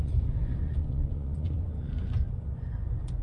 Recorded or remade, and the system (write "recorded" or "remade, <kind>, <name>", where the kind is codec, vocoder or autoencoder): remade, vocoder, Vocos